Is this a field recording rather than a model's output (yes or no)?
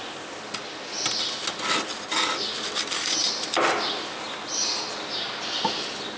yes